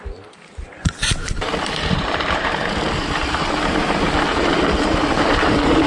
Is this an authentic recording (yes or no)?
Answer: no